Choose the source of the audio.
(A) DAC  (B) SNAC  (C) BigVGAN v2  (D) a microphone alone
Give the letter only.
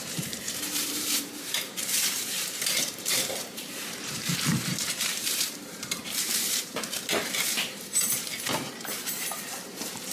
C